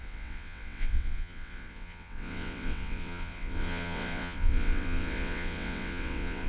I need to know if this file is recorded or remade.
remade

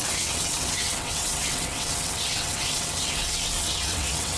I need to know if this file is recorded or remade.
remade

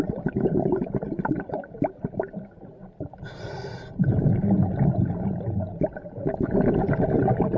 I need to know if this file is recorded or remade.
recorded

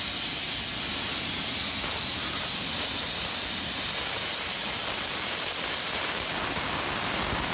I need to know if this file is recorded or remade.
recorded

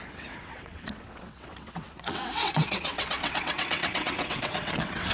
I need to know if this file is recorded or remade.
remade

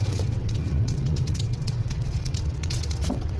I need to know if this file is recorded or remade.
remade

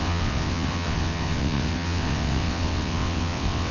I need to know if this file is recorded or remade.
remade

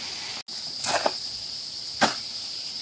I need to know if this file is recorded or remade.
recorded